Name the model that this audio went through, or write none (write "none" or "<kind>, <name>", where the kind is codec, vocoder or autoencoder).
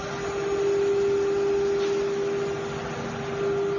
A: none